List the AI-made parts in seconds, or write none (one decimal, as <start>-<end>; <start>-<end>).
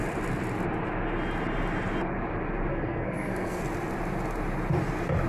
2.7-3.6